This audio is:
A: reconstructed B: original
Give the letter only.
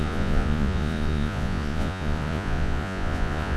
A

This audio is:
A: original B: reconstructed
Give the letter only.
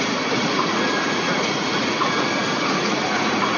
B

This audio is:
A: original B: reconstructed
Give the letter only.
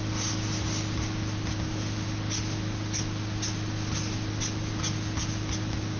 A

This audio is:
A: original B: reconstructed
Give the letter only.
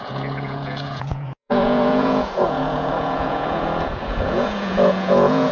B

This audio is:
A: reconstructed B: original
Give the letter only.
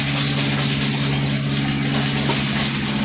B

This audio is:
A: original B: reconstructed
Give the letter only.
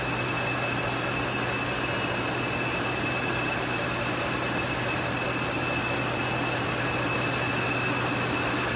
A